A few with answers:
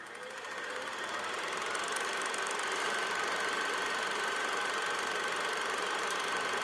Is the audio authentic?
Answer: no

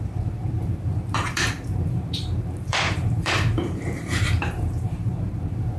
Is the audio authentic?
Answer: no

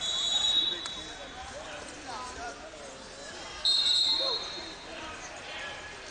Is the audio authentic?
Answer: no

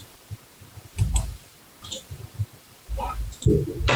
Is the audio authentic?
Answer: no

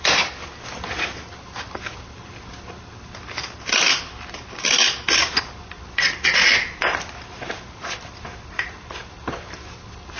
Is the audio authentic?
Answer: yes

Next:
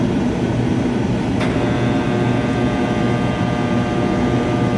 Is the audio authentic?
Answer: yes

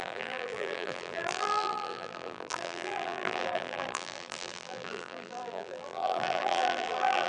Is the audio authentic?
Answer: no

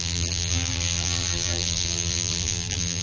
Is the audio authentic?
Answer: no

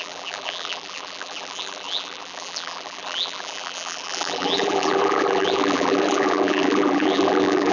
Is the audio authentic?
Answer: no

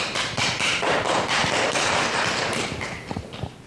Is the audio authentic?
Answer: no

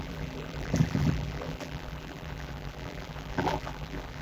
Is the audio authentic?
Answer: no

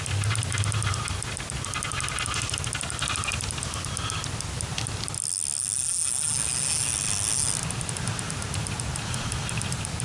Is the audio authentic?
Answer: yes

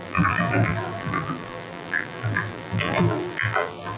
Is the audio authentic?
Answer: no